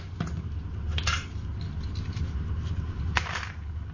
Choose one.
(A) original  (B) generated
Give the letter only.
B